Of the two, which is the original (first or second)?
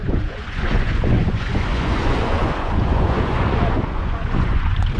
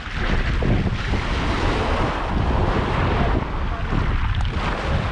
second